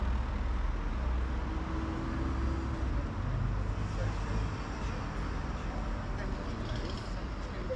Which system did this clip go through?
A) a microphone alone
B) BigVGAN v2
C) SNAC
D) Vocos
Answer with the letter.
A